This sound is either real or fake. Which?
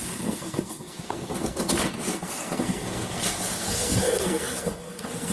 fake